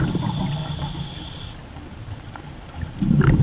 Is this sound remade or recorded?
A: recorded